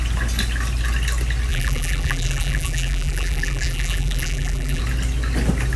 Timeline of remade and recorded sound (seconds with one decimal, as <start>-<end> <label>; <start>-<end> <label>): 0.0-1.5 recorded; 1.5-4.8 remade; 4.8-5.8 recorded

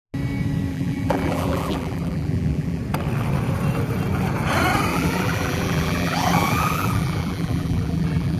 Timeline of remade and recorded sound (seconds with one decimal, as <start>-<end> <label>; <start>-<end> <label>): 0.0-0.7 recorded; 0.7-2.8 remade; 2.8-4.9 recorded; 4.9-8.4 remade

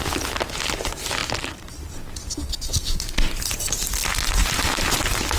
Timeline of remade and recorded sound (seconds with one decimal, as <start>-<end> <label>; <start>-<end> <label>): 0.0-5.4 recorded

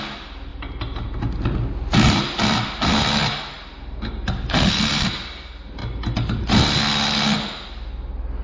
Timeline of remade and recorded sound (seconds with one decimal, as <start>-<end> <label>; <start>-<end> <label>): 0.0-0.5 recorded; 0.5-1.2 remade; 1.2-8.4 recorded

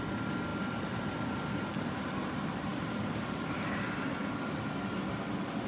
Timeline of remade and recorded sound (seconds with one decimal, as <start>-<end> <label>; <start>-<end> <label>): 0.0-2.7 recorded; 2.7-4.1 remade; 4.1-5.7 recorded

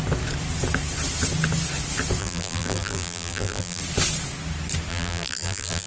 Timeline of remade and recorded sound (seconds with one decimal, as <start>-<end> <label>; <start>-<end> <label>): 0.0-2.2 recorded; 2.2-3.8 remade; 3.8-4.9 recorded; 4.9-5.9 remade

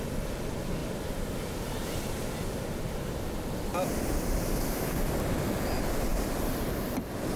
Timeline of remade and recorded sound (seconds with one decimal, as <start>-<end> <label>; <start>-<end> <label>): 0.0-0.8 remade; 0.8-2.6 recorded; 2.6-3.7 remade; 3.7-5.0 recorded; 5.0-7.4 remade

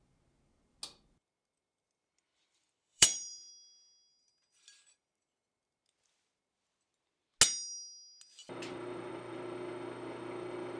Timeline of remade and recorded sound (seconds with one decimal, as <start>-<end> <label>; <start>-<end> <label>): 0.0-2.3 recorded; 2.3-3.5 remade; 3.5-10.8 recorded